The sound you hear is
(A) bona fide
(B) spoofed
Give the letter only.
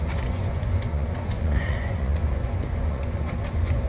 B